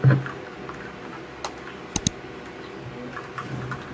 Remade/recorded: recorded